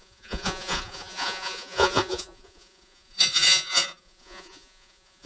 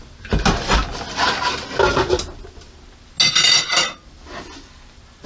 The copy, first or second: first